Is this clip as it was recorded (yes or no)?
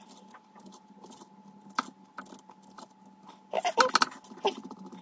yes